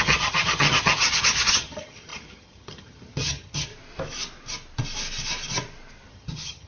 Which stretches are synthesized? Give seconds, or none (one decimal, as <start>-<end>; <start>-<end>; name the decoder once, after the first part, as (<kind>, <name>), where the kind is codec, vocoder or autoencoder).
0.0-3.7 (vocoder, HiFi-GAN); 6.1-6.7